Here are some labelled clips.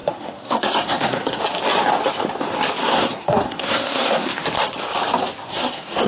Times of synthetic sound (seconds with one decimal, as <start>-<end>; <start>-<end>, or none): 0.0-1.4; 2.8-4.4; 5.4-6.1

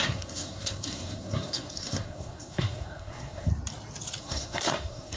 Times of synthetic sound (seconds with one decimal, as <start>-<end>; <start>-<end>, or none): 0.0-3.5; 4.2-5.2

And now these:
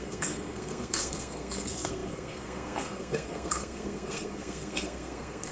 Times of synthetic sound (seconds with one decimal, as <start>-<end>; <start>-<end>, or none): 0.0-5.5

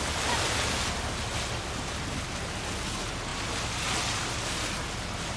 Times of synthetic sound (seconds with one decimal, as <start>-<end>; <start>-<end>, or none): none

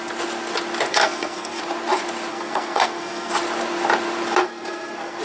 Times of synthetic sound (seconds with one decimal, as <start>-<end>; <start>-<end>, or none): 0.9-1.6; 2.3-3.3; 4.4-5.2

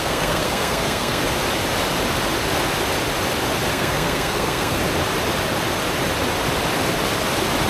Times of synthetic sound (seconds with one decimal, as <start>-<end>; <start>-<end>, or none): 0.0-1.2; 3.7-4.8

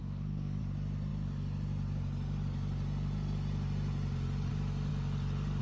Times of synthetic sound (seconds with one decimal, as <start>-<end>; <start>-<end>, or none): 0.0-0.6

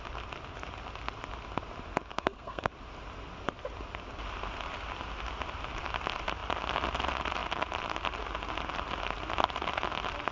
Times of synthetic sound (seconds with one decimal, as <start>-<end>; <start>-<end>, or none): 2.1-2.7